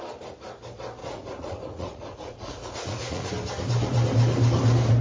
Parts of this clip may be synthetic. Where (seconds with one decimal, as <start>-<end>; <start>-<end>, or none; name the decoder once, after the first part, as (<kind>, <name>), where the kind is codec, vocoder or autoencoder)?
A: 1.0-3.3 (vocoder, Vocos)